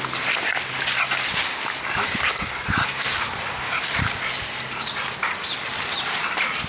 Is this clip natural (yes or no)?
yes